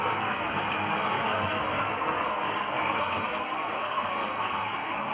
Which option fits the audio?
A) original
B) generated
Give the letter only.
B